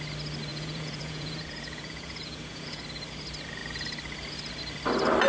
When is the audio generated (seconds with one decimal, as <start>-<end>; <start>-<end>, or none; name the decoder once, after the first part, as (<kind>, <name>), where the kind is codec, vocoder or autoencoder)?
0.5-2.8 (vocoder, Vocos)